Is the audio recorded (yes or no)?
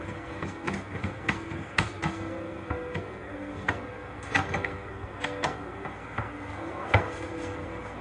no